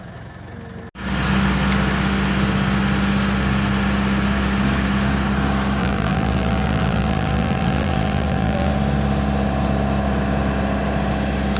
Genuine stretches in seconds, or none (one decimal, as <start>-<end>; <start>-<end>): 0.0-5.8; 8.7-11.6